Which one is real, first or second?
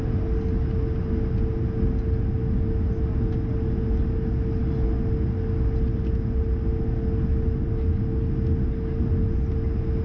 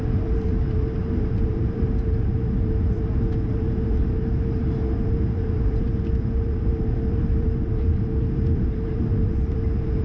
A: first